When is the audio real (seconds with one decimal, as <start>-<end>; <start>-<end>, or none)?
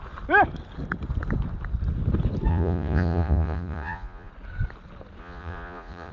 0.0-2.5; 4.3-5.2